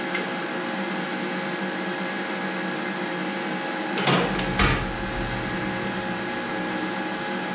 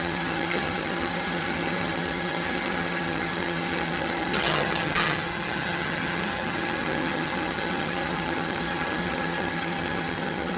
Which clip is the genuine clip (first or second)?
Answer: first